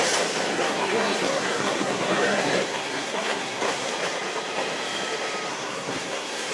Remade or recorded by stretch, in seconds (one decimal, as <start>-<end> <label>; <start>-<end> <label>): 0.0-0.5 recorded; 0.5-3.9 remade; 3.9-5.5 recorded; 5.5-6.5 remade